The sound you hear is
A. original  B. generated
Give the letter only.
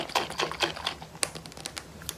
A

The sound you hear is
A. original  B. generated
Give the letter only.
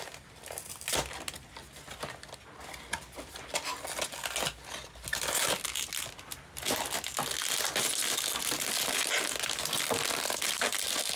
A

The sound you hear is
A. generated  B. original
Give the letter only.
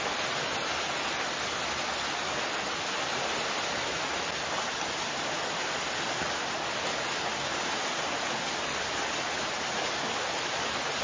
B